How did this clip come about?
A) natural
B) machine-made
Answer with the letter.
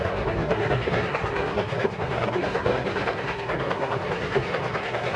B